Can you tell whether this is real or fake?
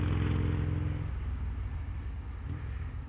real